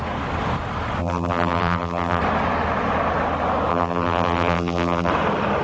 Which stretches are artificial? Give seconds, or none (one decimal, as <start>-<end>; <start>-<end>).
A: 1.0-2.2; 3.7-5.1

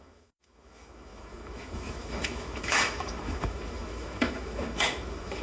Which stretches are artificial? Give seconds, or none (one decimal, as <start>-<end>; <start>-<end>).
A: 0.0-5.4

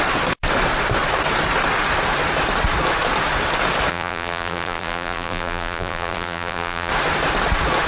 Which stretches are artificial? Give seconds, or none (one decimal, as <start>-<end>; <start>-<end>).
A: 3.9-6.9

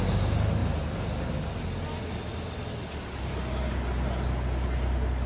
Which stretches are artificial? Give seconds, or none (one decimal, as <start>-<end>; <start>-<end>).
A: none

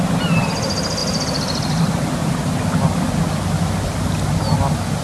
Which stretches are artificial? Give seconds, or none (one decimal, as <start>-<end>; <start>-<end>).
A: none

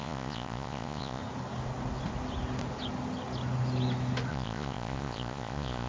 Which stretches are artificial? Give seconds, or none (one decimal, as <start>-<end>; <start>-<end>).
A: 0.0-1.2; 4.3-5.9

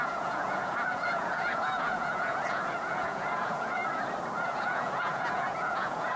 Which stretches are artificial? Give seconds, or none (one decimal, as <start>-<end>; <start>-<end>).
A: 0.0-3.8; 4.4-6.2